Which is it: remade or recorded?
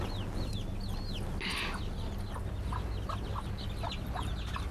recorded